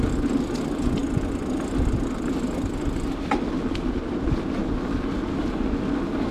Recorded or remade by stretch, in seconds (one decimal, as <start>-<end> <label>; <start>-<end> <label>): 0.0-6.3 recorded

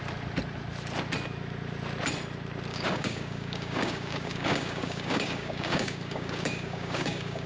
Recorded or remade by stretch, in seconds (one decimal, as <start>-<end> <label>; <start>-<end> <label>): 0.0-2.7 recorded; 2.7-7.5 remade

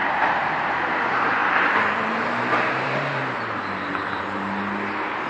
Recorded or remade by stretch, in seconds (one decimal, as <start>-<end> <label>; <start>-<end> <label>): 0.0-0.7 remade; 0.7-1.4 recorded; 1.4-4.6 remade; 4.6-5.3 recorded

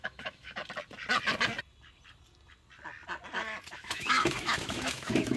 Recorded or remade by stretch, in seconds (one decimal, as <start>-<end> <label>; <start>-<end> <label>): 0.0-0.6 remade; 0.6-3.7 recorded; 3.7-5.4 remade